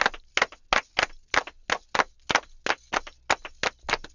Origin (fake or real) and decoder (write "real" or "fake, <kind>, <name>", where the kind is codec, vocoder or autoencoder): real